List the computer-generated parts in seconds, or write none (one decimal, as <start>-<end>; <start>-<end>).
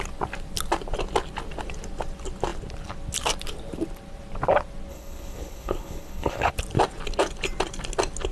4.9-6.5